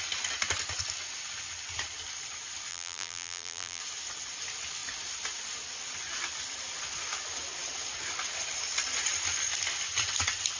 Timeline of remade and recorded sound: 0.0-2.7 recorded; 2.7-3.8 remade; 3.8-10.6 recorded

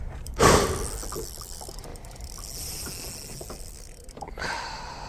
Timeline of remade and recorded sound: 0.0-5.1 recorded

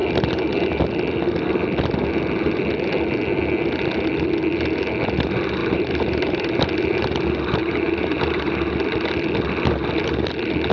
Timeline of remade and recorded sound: 0.0-5.6 recorded; 5.6-6.5 remade; 6.5-7.6 recorded; 7.6-8.7 remade; 8.7-10.7 recorded

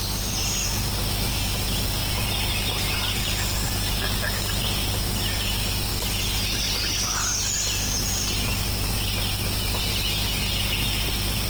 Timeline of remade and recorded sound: 0.0-11.5 recorded

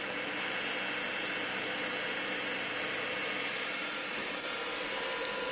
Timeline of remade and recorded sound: 0.0-3.8 recorded; 3.8-4.4 remade; 4.4-5.5 recorded